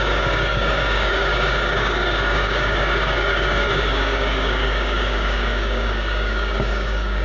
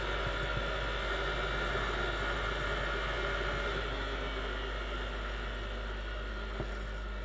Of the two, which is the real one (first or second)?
second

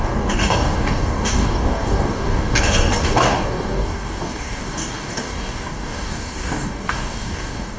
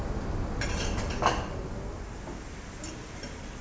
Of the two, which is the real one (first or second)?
second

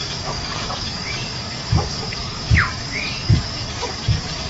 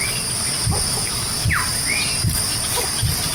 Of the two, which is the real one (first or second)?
second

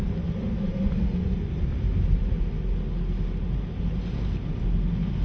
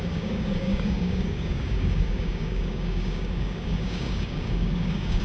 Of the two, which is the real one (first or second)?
first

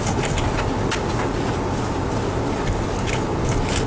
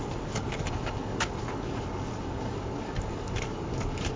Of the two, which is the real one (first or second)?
first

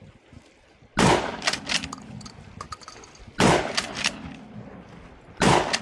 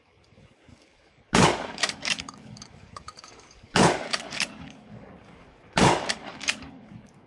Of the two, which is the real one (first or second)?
first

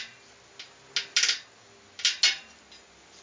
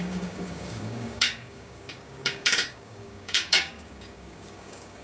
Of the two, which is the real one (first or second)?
first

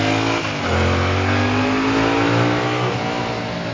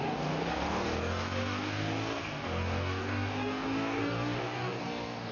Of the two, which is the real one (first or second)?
first